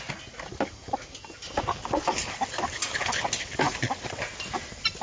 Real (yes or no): yes